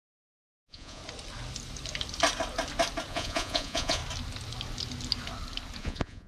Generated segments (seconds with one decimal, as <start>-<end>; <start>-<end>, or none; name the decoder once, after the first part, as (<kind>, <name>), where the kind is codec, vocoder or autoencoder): 0.0-1.0 (vocoder, Vocos); 3.1-4.0; 5.8-6.3